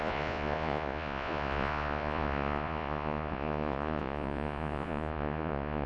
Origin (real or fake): fake